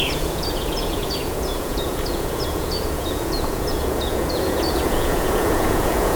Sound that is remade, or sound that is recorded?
remade